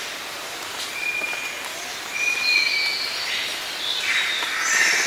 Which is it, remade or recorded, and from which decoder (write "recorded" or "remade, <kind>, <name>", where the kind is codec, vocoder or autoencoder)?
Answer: recorded